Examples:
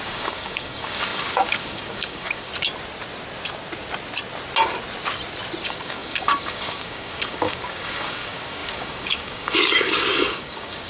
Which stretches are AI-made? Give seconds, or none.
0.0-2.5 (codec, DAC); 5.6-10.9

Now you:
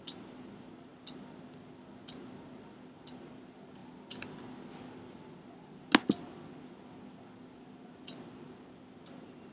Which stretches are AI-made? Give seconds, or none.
none

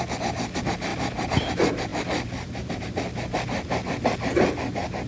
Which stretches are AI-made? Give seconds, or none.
none

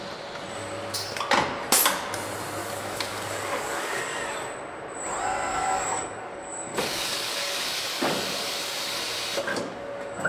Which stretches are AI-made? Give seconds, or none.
2.6-4.2 (codec, DAC); 5.5-9.0; 9.5-10.3

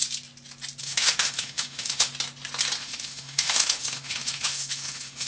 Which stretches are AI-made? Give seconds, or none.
0.8-2.1 (autoencoder, DAC-VAE); 2.8-5.3